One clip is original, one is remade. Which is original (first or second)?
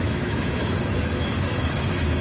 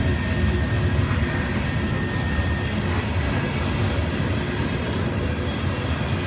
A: second